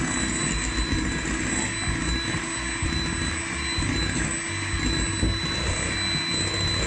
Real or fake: real